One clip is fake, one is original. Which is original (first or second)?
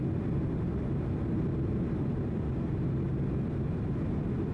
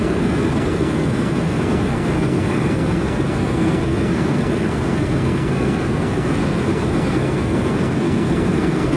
first